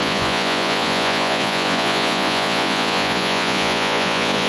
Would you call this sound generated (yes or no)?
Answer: yes